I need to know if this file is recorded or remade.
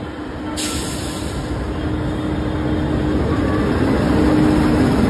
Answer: recorded